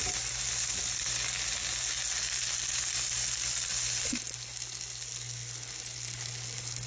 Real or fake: real